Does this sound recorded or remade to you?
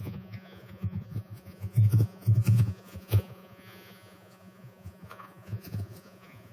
remade